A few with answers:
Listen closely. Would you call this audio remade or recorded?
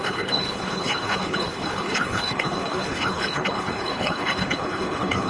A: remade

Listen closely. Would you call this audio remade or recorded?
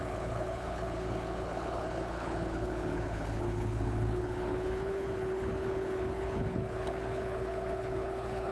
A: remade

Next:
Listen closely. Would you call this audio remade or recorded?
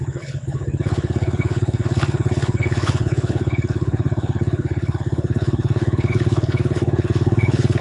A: remade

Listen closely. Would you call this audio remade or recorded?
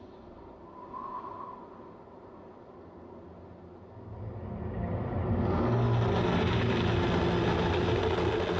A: recorded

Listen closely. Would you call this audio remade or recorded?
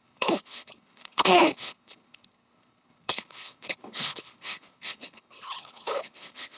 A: remade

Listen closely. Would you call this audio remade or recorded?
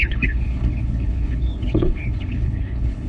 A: remade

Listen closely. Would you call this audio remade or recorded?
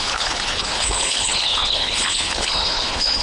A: remade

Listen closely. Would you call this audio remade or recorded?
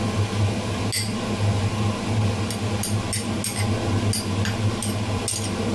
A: recorded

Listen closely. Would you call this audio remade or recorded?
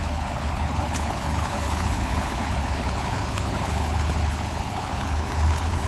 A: remade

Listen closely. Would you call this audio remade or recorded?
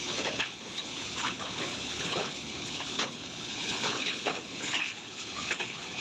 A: remade